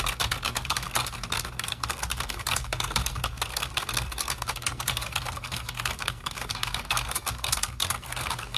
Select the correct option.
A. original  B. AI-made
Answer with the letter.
B